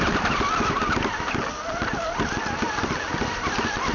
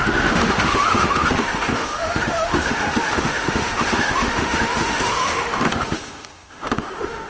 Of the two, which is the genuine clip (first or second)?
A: first